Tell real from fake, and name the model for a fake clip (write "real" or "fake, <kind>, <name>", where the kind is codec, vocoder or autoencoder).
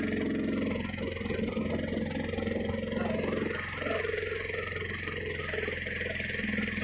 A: real